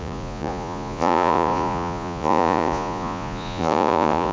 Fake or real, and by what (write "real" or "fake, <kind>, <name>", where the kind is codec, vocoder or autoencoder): fake, vocoder, Vocos